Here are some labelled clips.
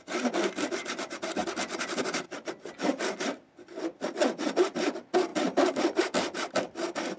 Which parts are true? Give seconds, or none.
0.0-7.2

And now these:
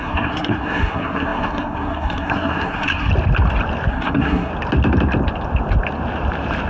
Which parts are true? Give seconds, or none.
3.1-3.9; 4.5-6.7

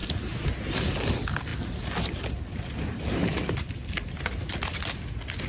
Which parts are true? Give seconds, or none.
0.0-5.5

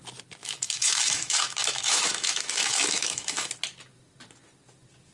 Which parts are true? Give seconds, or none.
0.0-0.4; 3.5-5.1

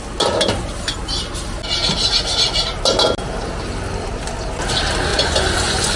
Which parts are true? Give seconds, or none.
0.0-5.1